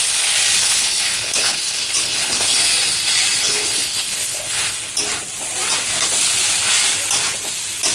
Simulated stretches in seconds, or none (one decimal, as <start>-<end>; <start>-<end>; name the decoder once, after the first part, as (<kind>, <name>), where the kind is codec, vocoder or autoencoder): 0.6-2.6 (codec, HILCodec); 3.4-4.9